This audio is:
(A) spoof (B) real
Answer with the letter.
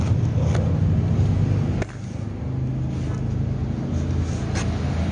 B